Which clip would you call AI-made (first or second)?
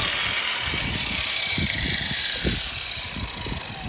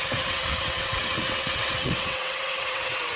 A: second